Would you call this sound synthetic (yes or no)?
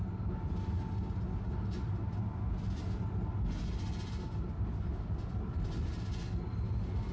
no